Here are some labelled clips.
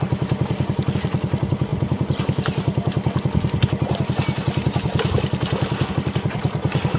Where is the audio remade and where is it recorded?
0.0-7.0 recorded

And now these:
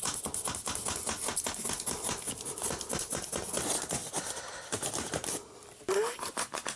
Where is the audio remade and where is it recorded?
0.0-1.3 recorded; 1.3-1.9 remade; 1.9-6.8 recorded

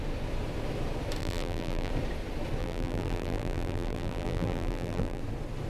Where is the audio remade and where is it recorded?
0.0-1.2 recorded; 1.2-1.9 remade; 1.9-2.6 recorded; 2.6-5.2 remade; 5.2-5.7 recorded

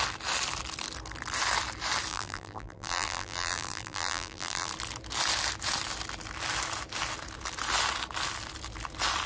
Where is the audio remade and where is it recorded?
0.0-2.1 recorded; 2.1-4.7 remade; 4.7-9.3 recorded

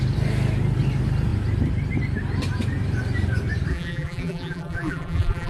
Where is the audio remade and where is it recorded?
0.0-3.7 recorded; 3.7-5.5 remade